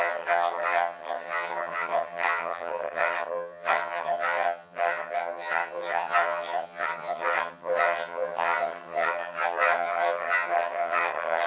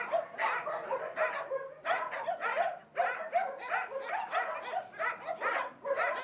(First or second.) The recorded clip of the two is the second